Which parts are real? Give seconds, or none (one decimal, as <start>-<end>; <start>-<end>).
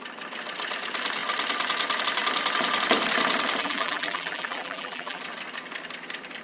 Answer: 0.0-3.6; 5.2-6.4